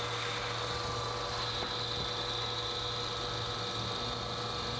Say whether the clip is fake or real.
real